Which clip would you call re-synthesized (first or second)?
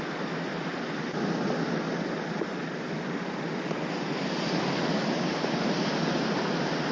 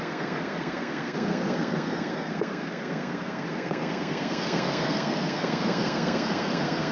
second